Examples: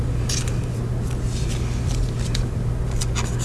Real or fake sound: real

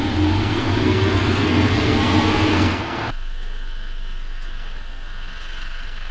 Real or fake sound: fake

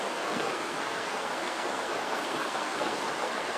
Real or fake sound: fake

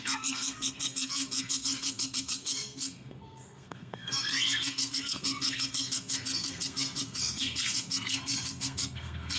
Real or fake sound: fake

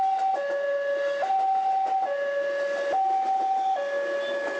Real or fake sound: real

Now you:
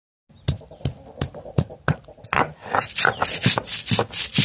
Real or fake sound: real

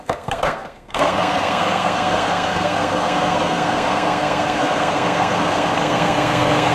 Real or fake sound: fake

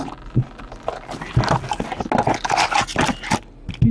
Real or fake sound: real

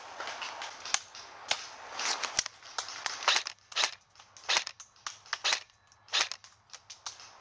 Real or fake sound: real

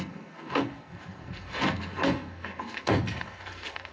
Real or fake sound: fake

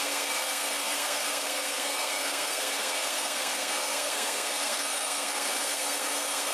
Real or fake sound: fake